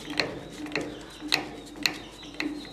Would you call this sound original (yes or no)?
yes